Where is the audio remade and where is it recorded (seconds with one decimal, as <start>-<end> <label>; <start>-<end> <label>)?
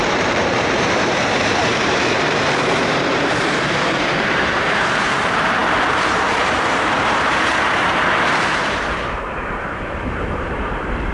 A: 0.0-11.1 remade